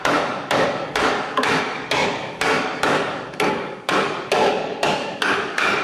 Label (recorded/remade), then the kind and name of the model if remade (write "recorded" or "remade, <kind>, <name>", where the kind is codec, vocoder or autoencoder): remade, codec, DAC